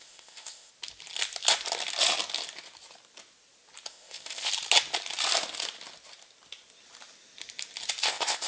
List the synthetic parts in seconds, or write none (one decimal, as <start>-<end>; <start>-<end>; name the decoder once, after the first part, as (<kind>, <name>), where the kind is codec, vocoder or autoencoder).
0.0-0.7 (codec, ZipCodec); 3.9-4.5; 8.0-8.5